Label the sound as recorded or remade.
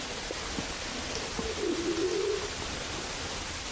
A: recorded